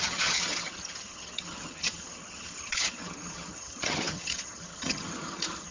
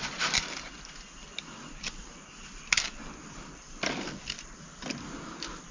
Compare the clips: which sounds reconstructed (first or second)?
first